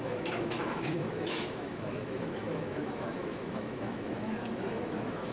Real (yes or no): no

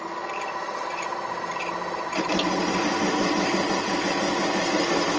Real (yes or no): yes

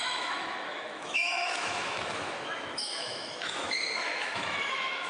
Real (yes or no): no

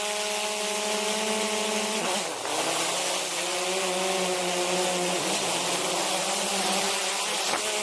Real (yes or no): yes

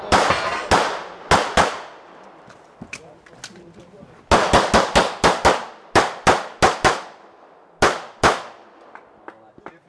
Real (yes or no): yes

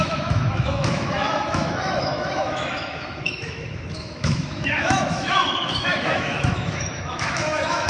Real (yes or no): no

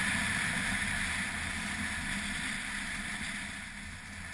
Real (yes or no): yes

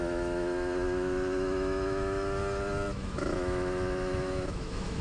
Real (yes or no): no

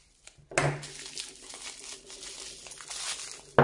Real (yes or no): yes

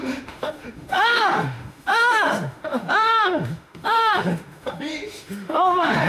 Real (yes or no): no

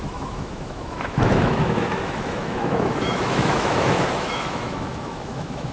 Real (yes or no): no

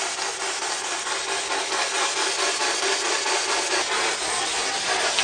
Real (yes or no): yes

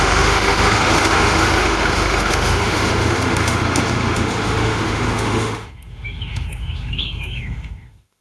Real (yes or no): no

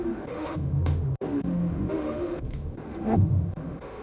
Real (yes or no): no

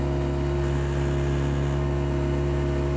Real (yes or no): yes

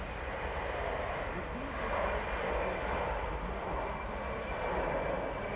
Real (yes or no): yes